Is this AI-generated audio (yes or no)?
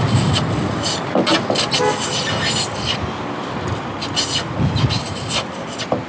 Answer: no